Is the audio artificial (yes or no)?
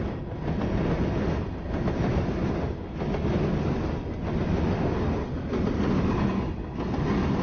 no